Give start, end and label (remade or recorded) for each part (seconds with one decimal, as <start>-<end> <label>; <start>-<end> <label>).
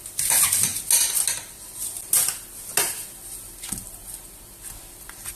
0.0-5.4 recorded